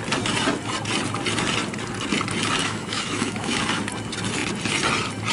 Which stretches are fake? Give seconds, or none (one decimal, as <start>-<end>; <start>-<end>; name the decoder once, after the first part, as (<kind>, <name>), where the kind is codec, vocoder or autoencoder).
2.6-3.6 (autoencoder, DAC-VAE)